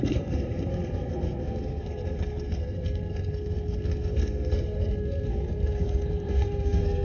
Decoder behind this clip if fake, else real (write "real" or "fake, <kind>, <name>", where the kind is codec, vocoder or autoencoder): fake, codec, SNAC